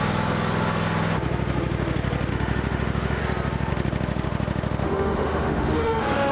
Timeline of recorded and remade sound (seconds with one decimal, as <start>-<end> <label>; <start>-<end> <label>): 0.0-2.3 recorded; 2.3-3.2 remade; 3.2-3.7 recorded; 3.7-6.3 remade